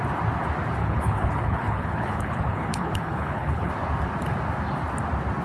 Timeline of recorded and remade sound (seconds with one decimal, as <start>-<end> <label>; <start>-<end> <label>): 0.0-0.8 recorded; 0.8-3.7 remade; 3.7-5.4 recorded